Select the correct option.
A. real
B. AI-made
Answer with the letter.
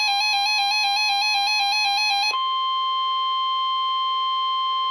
A